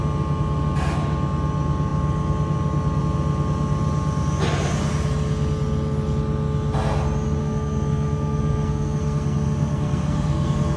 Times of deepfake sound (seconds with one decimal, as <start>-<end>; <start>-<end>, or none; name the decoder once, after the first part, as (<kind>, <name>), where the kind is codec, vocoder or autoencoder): 7.4-10.8 (codec, SNAC)